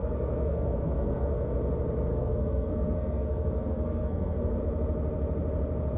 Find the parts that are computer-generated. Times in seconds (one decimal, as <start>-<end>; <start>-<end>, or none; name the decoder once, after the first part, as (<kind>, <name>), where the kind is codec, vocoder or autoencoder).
0.0-1.5 (codec, SNAC); 2.1-4.6